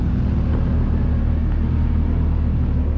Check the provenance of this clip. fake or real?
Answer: real